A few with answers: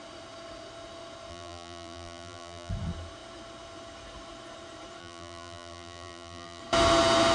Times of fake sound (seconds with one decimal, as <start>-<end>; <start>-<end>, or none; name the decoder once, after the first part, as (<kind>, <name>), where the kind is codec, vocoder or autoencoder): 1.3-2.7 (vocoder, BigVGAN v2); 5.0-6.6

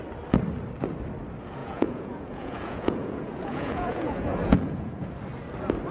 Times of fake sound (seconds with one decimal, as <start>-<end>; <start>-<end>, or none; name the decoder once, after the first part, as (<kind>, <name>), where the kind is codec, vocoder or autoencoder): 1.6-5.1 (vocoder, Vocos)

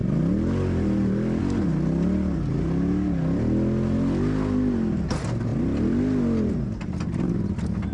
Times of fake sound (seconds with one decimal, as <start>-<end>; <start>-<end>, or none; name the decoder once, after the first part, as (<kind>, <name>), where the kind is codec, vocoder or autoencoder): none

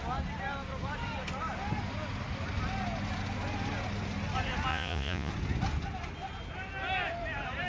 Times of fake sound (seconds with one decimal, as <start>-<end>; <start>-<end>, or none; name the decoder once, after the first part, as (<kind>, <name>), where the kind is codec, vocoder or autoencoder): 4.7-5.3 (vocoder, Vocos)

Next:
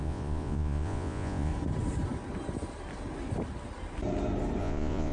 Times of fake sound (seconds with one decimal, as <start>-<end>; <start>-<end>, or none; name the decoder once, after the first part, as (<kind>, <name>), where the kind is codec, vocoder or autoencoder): 0.0-1.5 (vocoder, Vocos); 4.6-5.1

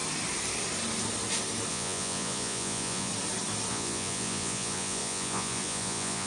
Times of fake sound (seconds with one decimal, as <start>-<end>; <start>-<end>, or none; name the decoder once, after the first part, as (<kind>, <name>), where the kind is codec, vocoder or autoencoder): 1.7-3.1 (vocoder, Vocos); 3.7-6.3

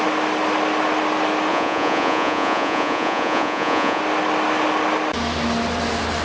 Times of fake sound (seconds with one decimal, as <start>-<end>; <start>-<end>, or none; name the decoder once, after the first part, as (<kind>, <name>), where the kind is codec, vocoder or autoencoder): 1.5-4.0 (vocoder, Vocos)